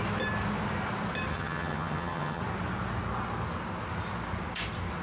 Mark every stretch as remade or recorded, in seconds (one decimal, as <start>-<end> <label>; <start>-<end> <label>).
0.0-1.3 recorded; 1.3-2.4 remade; 2.4-5.0 recorded